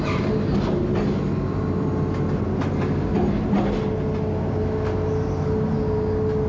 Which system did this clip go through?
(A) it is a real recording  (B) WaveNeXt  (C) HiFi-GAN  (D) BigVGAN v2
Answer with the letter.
A